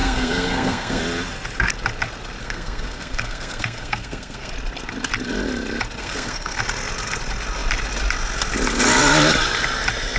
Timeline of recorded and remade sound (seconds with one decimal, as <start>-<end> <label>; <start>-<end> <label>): 0.0-1.0 remade; 1.0-2.4 recorded; 2.4-4.5 remade; 4.5-6.0 recorded; 6.0-6.6 remade; 6.6-10.2 recorded